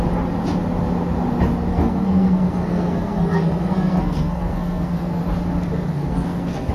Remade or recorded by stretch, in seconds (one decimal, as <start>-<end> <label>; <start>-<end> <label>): 0.0-1.7 recorded; 1.7-5.2 remade; 5.2-5.9 recorded; 5.9-6.7 remade